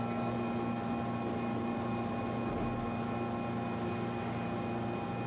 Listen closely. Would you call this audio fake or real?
real